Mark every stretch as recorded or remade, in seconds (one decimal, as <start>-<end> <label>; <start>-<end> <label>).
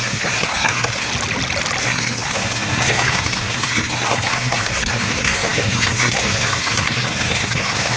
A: 0.0-1.1 remade; 1.1-1.8 recorded; 1.8-8.0 remade